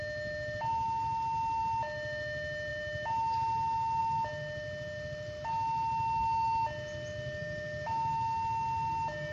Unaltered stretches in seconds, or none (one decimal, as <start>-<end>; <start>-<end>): 0.0-9.3